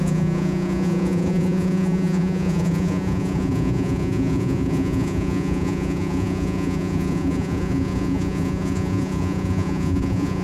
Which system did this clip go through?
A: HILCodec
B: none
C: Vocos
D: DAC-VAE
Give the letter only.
C